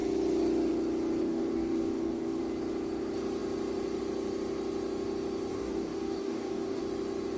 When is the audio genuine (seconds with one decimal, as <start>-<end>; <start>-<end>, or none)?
0.0-1.2; 2.4-5.5; 6.8-7.4